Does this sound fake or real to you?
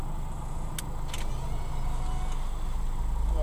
real